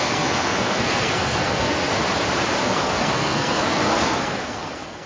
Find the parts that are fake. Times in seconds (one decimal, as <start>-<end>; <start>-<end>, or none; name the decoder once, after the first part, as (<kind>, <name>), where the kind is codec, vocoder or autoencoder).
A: 0.0-1.9 (codec, SNAC); 2.6-5.1